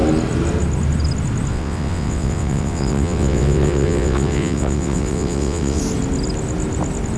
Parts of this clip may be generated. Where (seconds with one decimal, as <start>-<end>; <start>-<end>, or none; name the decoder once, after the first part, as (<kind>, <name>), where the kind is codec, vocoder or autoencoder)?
1.5-5.8 (vocoder, WaveNeXt)